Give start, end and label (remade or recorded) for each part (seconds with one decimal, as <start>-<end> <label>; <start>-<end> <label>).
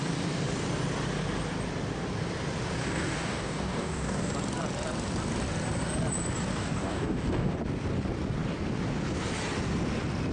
0.0-2.8 recorded; 2.8-4.3 remade; 4.3-6.5 recorded; 6.5-7.6 remade; 7.6-10.3 recorded